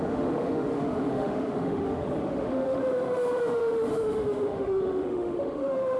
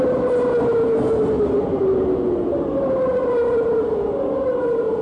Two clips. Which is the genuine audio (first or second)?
second